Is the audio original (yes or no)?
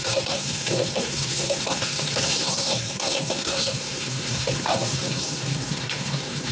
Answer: no